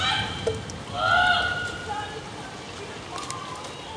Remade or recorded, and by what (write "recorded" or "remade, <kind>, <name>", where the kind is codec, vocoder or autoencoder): recorded